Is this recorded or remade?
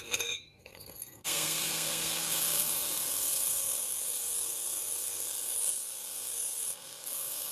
remade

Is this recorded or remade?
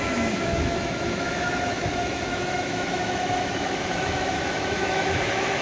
remade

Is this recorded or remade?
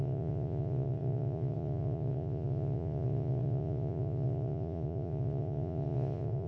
remade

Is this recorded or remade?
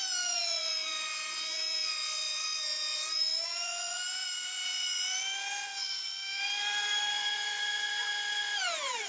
remade